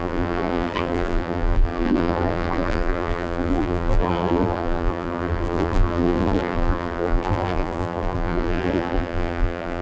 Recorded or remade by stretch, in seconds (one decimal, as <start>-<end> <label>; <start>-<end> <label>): 0.0-9.8 remade